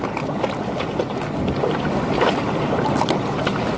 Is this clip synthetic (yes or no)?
no